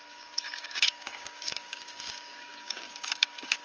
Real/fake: fake